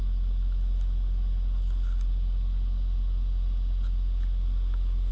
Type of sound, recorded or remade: recorded